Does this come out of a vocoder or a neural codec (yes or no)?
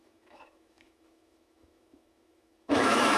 yes